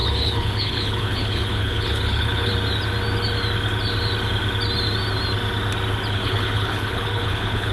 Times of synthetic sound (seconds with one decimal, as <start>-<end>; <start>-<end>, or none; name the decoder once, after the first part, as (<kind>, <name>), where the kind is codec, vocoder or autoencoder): 0.0-2.5 (codec, HILCodec); 6.1-7.7